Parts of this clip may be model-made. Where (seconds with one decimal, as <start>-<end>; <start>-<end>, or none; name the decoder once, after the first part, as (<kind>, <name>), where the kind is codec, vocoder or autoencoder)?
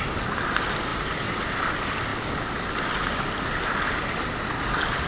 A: 2.1-2.9 (codec, DAC)